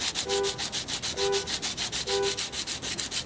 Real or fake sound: real